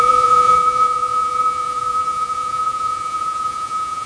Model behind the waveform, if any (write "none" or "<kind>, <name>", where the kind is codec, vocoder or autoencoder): vocoder, Vocos